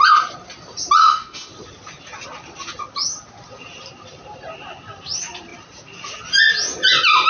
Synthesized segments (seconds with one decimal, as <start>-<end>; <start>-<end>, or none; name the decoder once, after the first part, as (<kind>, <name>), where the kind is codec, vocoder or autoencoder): 1.0-1.5 (autoencoder, DAC-VAE)